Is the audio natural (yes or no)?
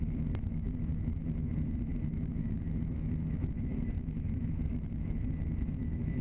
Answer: no